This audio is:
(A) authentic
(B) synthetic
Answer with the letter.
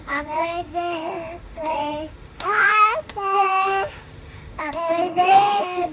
B